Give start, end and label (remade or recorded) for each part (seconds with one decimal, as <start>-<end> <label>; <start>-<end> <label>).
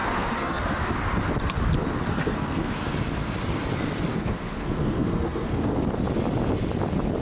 0.0-0.9 remade; 0.9-2.1 recorded; 2.1-2.7 remade; 2.7-4.1 recorded; 4.1-5.8 remade; 5.8-7.2 recorded